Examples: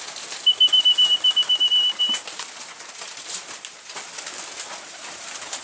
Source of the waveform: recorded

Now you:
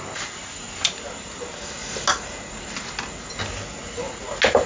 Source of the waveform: recorded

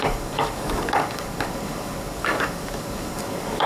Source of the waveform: remade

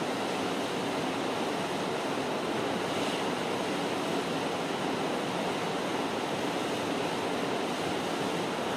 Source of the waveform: recorded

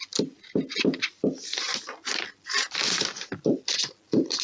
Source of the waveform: recorded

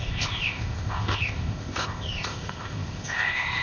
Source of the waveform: remade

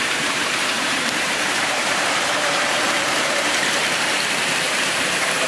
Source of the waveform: remade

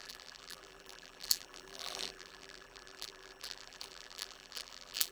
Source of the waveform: remade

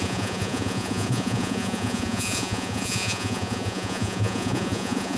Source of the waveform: remade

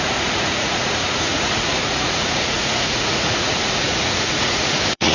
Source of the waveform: remade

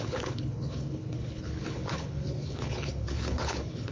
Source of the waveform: remade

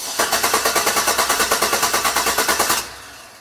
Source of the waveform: recorded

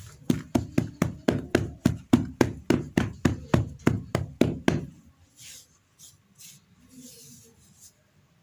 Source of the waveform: recorded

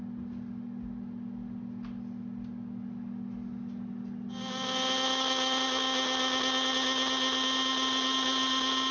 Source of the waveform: recorded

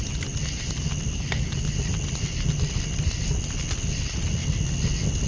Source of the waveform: recorded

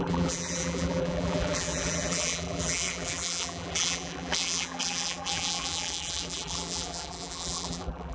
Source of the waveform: remade